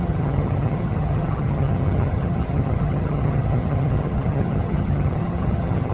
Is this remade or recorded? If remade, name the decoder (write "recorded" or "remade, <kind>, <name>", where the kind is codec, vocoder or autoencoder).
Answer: remade, vocoder, HiFi-GAN